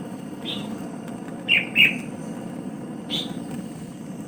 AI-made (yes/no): no